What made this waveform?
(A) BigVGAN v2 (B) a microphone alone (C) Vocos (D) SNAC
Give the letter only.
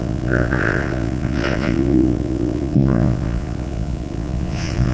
C